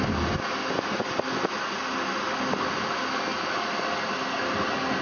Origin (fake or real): real